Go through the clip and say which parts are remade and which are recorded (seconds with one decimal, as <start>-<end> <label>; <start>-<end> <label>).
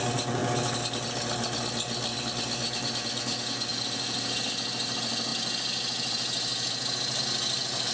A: 0.0-7.9 recorded